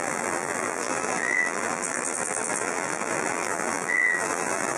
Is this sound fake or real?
fake